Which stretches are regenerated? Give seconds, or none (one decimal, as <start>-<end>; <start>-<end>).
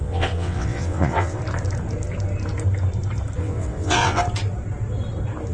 0.0-1.4; 3.4-4.2